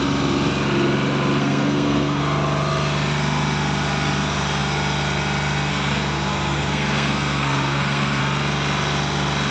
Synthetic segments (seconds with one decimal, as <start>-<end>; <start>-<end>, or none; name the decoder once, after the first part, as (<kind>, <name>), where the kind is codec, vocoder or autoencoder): 1.4-2.2 (codec, SNAC); 5.7-8.2